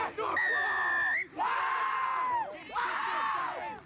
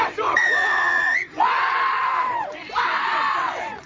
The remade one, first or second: second